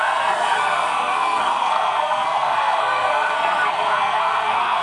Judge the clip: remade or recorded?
remade